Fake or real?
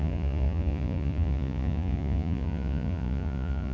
fake